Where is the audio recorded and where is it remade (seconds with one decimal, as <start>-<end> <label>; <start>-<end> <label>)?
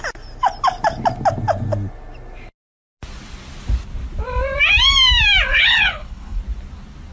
0.0-5.5 recorded; 5.5-6.4 remade; 6.4-7.1 recorded